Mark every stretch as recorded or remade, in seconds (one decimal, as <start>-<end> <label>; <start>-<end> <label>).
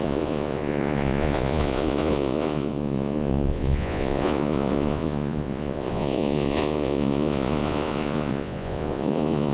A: 0.0-9.5 remade